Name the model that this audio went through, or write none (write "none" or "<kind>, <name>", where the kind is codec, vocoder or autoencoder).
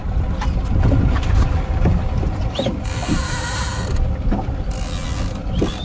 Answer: none